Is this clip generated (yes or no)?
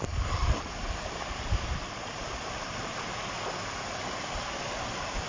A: no